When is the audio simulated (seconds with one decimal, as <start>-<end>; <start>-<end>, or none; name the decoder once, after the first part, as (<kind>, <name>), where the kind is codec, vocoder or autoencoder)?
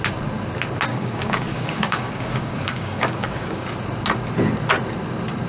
0.9-3.7 (codec, DAC)